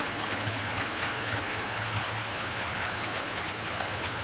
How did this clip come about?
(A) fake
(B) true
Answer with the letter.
A